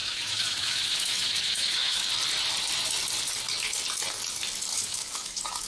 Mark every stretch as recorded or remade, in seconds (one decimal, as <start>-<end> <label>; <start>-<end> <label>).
0.0-2.1 remade; 2.1-4.7 recorded; 4.7-5.7 remade